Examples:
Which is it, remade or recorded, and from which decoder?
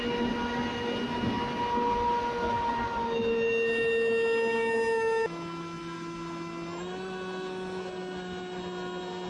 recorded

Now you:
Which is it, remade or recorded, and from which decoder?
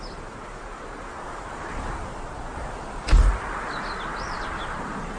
recorded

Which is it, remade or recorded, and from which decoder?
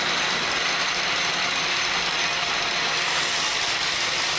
recorded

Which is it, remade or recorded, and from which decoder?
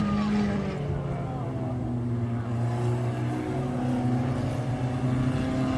recorded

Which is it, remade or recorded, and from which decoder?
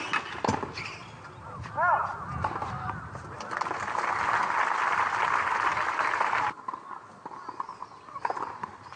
recorded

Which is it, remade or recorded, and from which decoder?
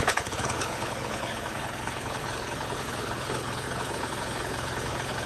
remade, codec, HILCodec